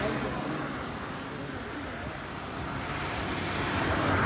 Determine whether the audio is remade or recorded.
recorded